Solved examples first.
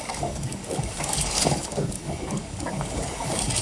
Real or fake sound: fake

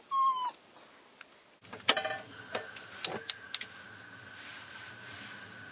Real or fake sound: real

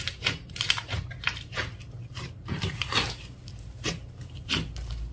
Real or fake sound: fake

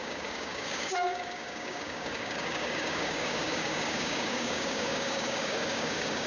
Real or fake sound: fake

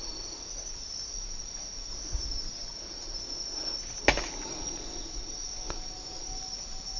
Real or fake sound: real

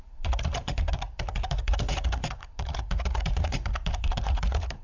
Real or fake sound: fake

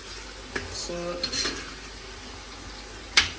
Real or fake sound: real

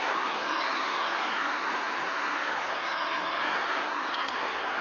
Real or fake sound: fake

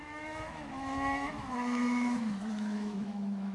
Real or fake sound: fake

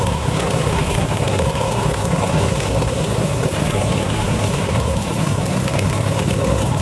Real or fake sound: fake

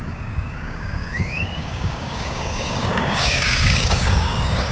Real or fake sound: fake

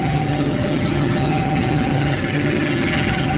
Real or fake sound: fake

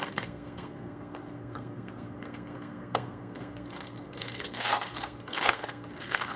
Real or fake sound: fake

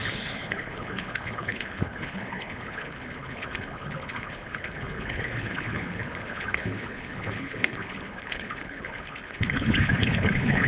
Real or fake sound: fake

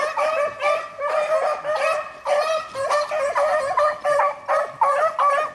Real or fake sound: real